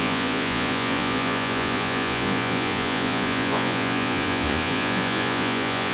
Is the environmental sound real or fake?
fake